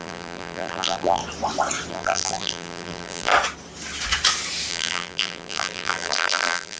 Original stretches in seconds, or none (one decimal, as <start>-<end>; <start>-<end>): 1.2-1.9; 3.3-4.7